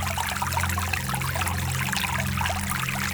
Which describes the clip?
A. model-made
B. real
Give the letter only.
B